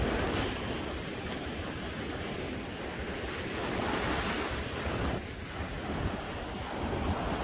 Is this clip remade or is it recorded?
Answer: recorded